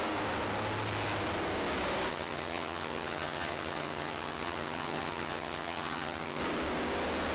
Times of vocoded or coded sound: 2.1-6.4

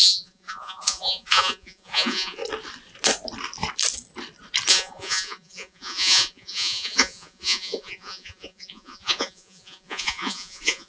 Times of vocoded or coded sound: 0.0-2.4; 4.7-10.9

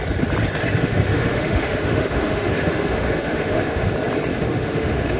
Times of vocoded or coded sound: 0.8-3.9; 4.3-5.2

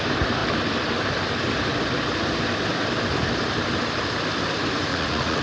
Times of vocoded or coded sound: 4.9-5.4

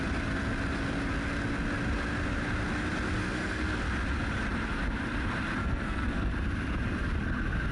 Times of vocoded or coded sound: 3.2-3.8; 5.6-6.3